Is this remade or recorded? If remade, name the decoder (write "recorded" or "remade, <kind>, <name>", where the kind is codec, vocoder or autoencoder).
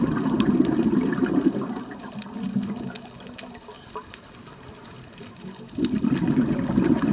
recorded